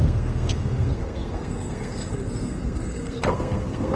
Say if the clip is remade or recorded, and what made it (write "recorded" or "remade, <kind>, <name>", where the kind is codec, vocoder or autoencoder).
remade, codec, SNAC